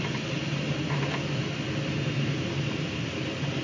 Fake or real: real